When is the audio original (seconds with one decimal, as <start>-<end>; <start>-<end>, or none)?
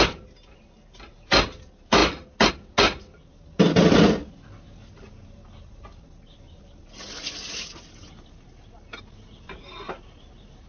0.0-10.7